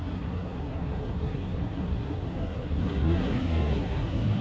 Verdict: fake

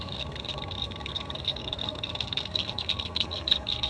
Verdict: fake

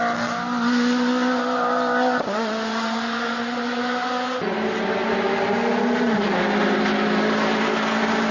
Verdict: real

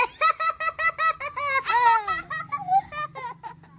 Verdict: real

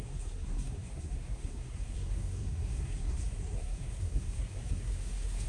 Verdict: fake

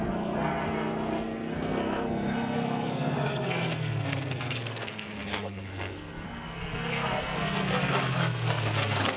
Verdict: fake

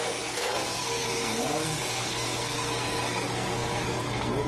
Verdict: fake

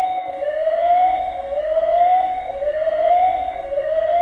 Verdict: fake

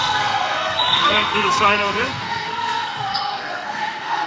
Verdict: fake